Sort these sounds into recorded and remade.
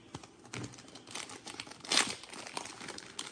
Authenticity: recorded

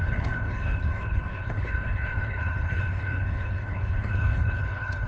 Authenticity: remade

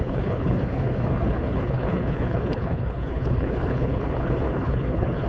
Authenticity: remade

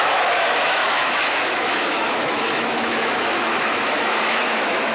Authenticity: remade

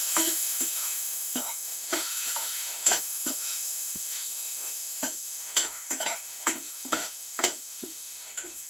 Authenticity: remade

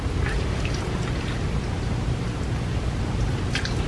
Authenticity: recorded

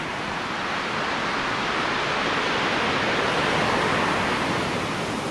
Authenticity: recorded